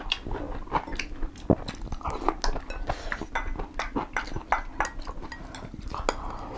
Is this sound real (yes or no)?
yes